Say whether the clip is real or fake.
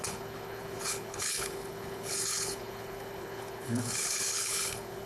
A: fake